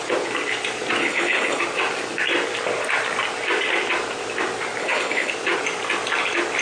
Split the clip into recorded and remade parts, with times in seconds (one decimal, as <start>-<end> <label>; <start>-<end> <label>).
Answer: 0.0-1.0 recorded; 1.0-1.6 remade; 1.6-4.8 recorded; 4.8-5.3 remade; 5.3-6.6 recorded